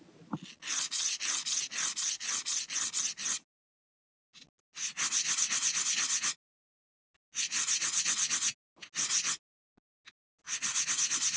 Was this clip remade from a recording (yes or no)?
no